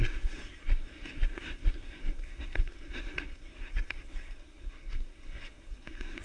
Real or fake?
fake